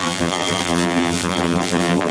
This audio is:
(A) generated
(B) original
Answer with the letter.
A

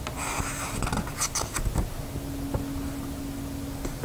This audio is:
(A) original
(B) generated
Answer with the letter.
A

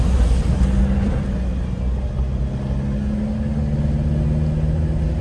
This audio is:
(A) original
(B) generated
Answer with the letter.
A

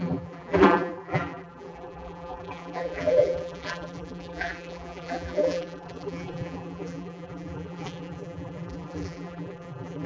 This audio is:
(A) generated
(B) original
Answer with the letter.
A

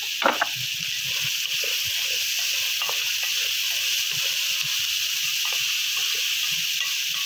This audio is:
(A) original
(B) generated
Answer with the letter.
A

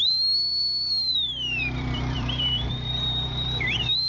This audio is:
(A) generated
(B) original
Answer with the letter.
A